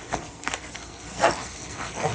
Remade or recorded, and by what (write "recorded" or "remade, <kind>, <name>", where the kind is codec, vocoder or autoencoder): remade, codec, SNAC